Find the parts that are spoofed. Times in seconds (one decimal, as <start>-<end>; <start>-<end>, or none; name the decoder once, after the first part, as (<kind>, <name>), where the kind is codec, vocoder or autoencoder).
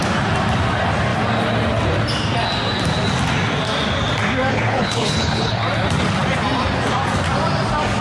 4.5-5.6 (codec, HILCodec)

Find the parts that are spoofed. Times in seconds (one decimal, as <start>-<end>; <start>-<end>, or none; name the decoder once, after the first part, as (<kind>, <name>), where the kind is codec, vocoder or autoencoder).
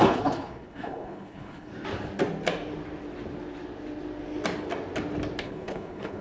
0.0-1.7 (codec, HILCodec); 5.4-6.2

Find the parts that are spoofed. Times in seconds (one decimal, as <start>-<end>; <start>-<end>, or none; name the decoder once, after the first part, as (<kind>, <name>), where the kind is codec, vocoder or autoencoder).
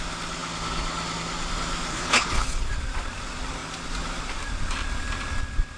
1.9-2.7 (codec, HILCodec)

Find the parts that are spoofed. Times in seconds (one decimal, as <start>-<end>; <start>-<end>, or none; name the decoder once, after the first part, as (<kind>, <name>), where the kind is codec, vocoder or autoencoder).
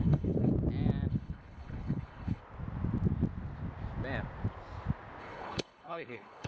0.0-0.5 (codec, HILCodec); 1.1-2.4; 5.2-6.5